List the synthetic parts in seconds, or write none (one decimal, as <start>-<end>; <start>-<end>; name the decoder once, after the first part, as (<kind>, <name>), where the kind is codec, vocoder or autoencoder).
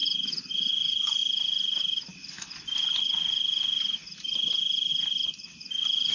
0.0-0.5 (vocoder, BigVGAN v2)